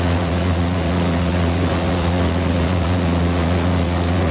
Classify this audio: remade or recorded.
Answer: remade